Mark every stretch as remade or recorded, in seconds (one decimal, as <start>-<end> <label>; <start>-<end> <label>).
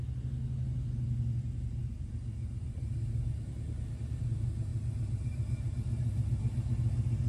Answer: 0.0-1.8 recorded; 1.8-3.5 remade; 3.5-7.3 recorded